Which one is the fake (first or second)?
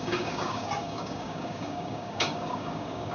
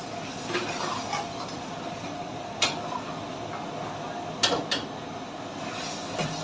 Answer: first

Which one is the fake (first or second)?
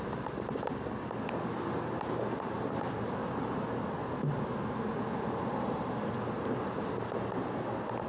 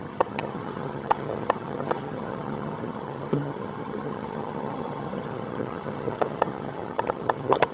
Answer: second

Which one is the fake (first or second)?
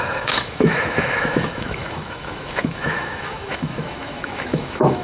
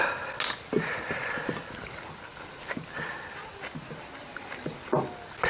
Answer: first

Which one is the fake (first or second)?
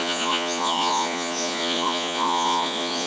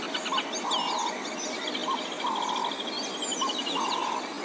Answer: first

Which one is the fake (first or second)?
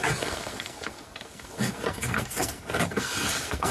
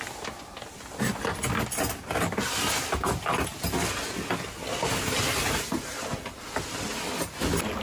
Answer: first